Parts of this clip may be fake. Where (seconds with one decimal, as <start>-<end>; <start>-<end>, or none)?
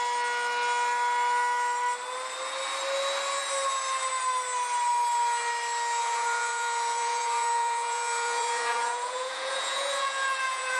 6.0-10.8